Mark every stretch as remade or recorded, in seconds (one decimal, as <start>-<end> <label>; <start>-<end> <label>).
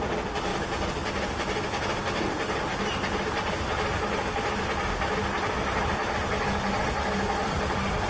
0.0-8.1 recorded